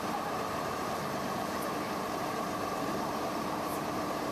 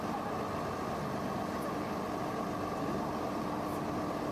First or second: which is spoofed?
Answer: first